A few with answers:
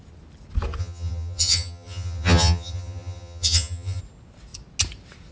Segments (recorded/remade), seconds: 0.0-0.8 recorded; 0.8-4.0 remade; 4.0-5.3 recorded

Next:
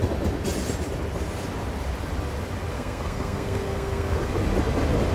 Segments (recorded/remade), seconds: 0.0-2.7 recorded; 2.7-4.3 remade; 4.3-5.1 recorded

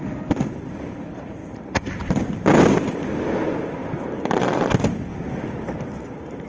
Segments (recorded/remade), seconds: 0.0-1.4 recorded; 1.4-2.2 remade; 2.2-3.8 recorded; 3.8-4.4 remade; 4.4-5.1 recorded; 5.1-6.1 remade; 6.1-6.5 recorded

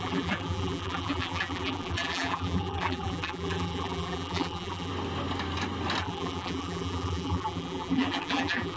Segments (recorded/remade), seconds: 0.0-4.9 remade; 4.9-6.0 recorded; 6.0-8.8 remade

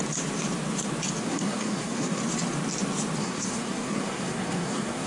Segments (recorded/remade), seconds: 0.0-1.2 recorded; 1.2-2.2 remade; 2.2-3.2 recorded; 3.2-5.1 remade

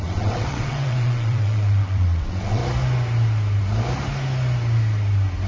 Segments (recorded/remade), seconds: 0.0-2.6 remade; 2.6-5.5 recorded

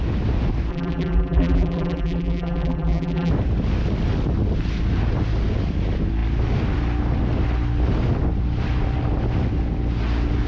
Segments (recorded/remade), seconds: 0.0-0.7 recorded; 0.7-3.3 remade; 3.3-10.5 recorded

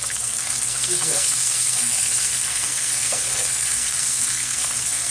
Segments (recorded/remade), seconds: 0.0-5.1 remade